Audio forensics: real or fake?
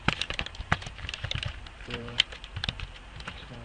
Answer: fake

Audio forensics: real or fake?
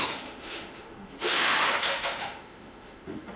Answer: fake